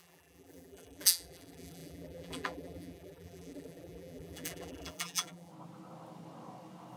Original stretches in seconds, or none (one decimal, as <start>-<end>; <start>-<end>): 5.5-7.0